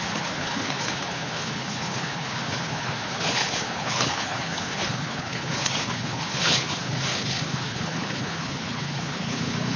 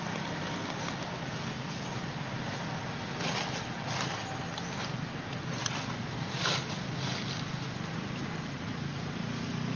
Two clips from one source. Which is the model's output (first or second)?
first